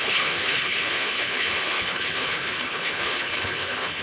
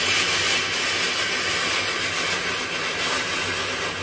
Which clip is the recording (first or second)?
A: second